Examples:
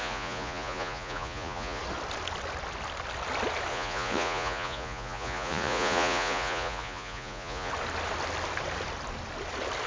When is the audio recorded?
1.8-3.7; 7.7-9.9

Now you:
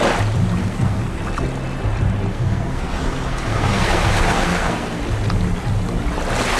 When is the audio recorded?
0.0-0.6; 1.2-2.3; 5.0-6.6

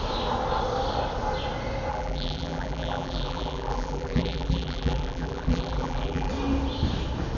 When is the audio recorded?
0.0-1.9; 6.3-7.4

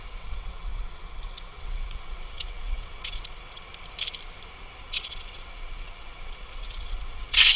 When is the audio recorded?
3.7-4.8

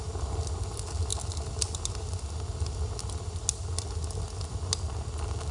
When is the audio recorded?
0.0-5.5

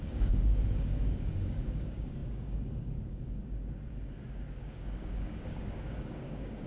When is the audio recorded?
none

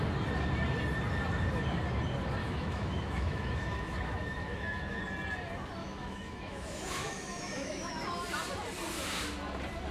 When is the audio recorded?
0.0-2.4; 5.0-5.8; 7.9-9.9

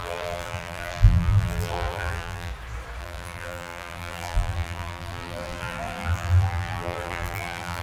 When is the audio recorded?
2.5-3.0